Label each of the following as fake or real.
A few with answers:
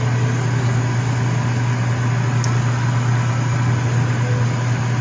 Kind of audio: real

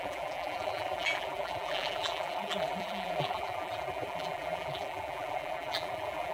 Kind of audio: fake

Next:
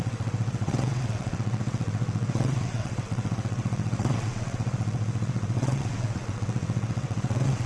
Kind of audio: fake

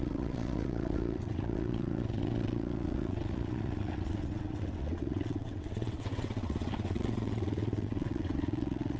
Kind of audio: fake